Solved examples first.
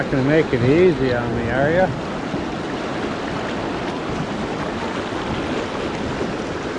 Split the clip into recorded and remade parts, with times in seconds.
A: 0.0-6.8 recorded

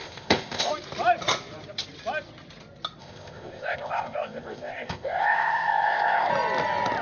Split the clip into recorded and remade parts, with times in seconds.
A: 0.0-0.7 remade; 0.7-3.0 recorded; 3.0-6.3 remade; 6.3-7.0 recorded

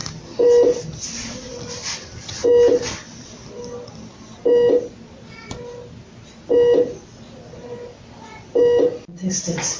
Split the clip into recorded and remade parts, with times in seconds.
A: 0.0-9.8 recorded